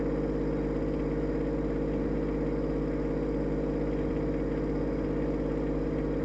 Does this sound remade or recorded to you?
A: recorded